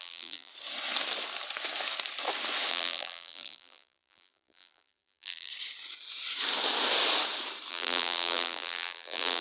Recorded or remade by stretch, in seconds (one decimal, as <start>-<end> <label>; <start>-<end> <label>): 0.0-0.5 remade; 0.5-2.7 recorded; 2.7-5.5 remade; 5.5-7.7 recorded; 7.7-9.4 remade